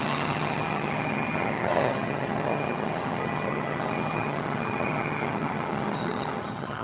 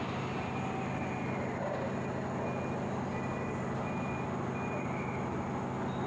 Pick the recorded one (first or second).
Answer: second